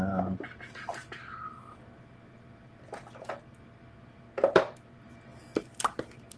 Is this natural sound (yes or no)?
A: yes